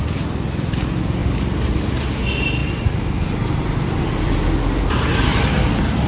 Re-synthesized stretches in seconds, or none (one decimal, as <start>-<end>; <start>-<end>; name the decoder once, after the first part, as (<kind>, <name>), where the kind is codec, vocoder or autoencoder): 1.2-1.7 (vocoder, BigVGAN v2); 2.6-3.5